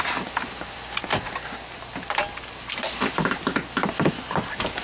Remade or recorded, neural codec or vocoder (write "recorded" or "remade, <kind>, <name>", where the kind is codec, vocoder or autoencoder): recorded